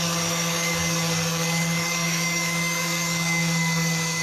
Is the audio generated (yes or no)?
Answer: yes